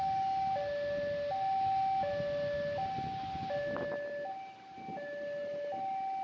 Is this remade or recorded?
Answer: recorded